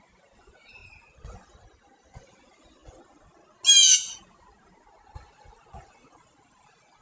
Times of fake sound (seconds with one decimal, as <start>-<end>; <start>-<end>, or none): 0.0-0.8; 1.4-2.8